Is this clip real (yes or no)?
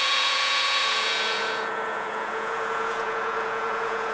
no